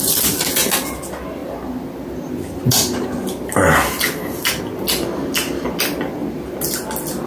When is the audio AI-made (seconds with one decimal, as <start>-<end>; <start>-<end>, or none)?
none